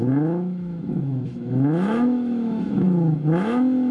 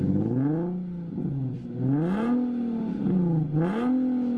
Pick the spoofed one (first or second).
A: first